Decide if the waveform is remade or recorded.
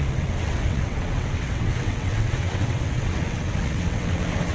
remade